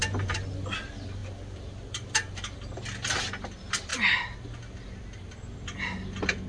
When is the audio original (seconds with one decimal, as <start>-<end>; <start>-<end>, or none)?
0.0-6.5